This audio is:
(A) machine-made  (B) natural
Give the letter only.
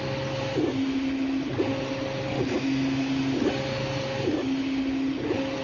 B